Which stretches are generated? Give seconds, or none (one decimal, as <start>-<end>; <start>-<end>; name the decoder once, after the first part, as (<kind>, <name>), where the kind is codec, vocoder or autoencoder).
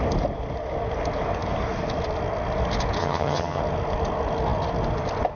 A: 3.0-3.6 (vocoder, HiFi-GAN)